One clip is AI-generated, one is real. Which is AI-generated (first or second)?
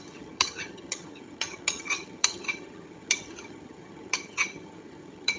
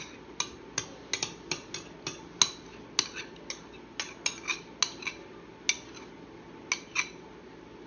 first